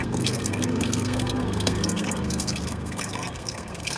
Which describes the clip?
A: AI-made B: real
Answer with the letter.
A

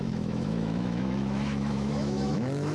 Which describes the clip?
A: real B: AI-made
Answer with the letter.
B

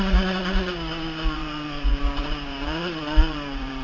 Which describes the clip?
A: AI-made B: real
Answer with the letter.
A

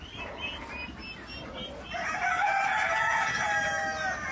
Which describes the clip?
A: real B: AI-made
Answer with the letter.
A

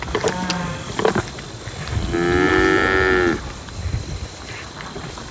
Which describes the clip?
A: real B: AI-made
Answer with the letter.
A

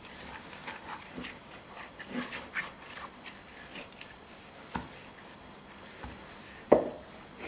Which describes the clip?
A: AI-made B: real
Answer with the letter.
B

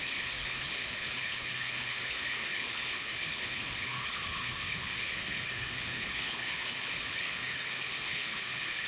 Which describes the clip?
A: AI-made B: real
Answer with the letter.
A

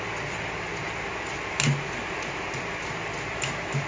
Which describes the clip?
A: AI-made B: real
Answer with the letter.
B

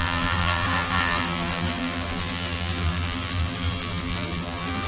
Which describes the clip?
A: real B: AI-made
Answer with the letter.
B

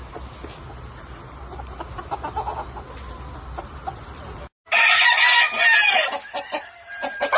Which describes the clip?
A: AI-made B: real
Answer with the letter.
B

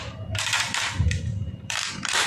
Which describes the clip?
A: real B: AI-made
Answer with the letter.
B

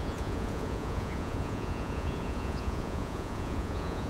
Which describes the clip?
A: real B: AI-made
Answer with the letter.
B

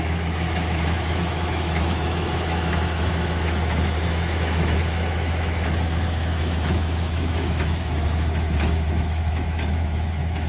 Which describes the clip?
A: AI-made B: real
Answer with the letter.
A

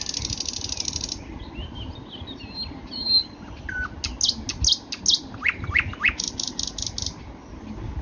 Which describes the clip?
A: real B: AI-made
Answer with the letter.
A